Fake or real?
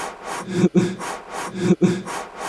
real